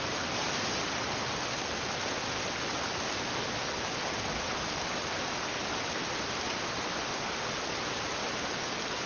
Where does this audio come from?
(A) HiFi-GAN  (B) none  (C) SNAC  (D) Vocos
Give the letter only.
B